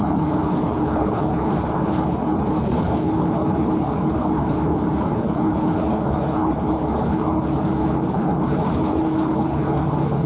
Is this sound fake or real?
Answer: fake